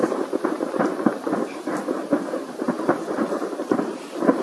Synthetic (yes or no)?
yes